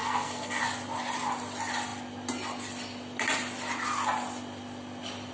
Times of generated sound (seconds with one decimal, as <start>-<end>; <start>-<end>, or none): 0.0-0.6